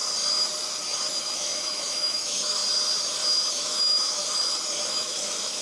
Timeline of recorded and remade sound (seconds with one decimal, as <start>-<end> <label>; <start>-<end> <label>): 0.0-1.2 recorded; 1.2-2.6 remade; 2.6-3.5 recorded; 3.5-4.2 remade; 4.2-4.8 recorded; 4.8-5.6 remade